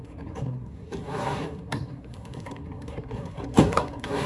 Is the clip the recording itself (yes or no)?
no